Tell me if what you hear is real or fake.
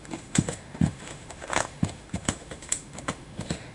fake